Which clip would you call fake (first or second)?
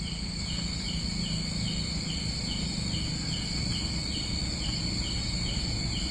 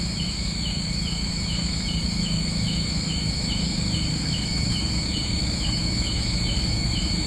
second